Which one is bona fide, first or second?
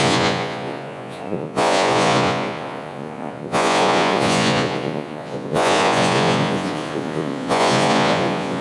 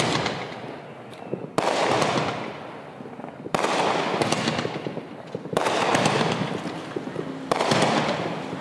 second